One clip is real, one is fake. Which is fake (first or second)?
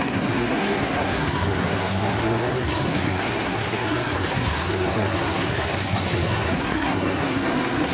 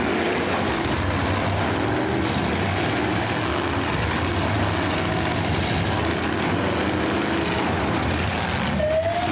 first